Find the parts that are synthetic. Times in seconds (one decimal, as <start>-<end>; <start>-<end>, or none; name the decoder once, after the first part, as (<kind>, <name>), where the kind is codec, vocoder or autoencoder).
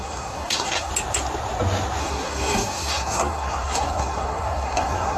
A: 0.0-0.9 (codec, SNAC); 2.0-5.2